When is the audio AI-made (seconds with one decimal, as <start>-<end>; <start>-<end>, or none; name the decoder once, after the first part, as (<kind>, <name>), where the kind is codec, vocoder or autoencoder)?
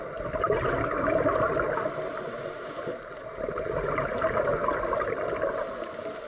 none